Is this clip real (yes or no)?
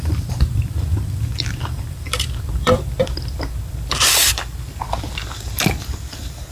no